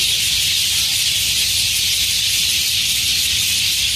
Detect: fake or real real